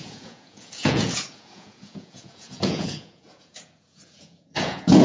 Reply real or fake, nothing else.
fake